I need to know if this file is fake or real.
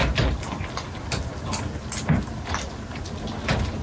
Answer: real